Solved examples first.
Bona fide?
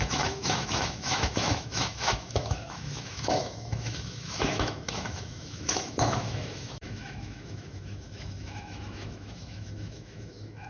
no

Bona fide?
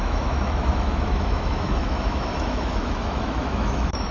no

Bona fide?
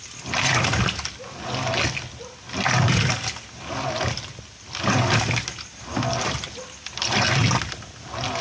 yes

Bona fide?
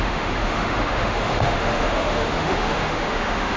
no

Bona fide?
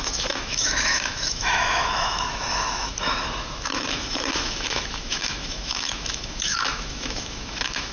no